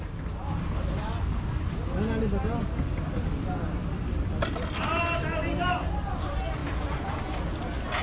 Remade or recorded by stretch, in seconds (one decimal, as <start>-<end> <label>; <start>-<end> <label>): 0.0-8.0 recorded